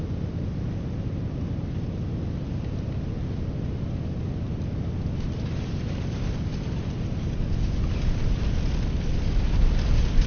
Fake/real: real